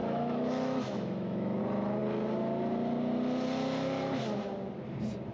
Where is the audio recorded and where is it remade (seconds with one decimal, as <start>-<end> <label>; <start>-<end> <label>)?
0.0-1.6 remade; 1.6-5.3 recorded